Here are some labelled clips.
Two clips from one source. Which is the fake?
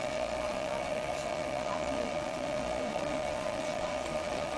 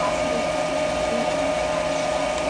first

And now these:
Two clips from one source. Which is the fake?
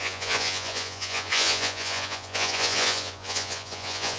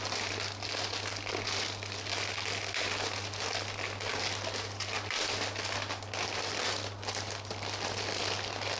first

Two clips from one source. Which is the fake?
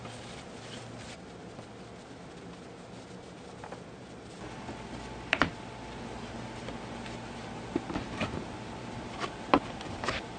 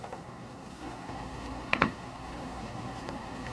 second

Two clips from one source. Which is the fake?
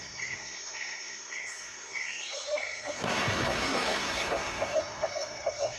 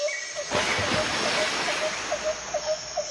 first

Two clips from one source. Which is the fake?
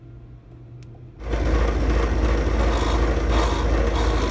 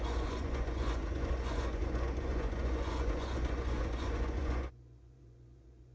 second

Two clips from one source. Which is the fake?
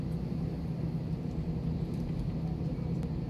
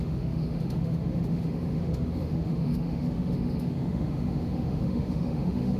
second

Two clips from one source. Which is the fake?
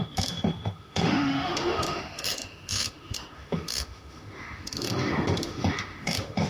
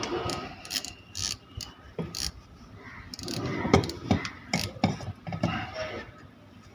first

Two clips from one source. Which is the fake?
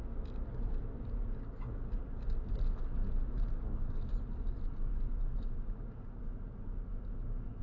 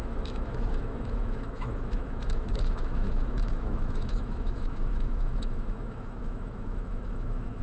second